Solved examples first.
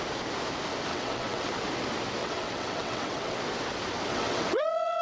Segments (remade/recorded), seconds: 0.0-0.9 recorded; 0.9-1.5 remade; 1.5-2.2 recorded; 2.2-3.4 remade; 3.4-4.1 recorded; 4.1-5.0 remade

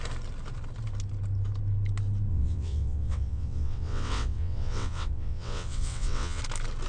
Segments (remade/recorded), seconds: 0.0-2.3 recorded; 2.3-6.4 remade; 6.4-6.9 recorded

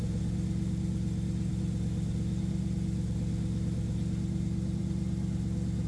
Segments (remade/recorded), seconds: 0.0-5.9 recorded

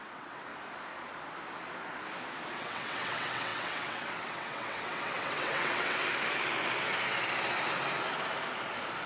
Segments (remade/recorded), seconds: 0.0-0.5 remade; 0.5-2.6 recorded; 2.6-6.0 remade; 6.0-9.1 recorded

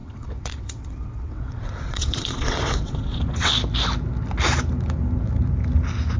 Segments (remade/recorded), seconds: 0.0-3.5 remade; 3.5-6.2 recorded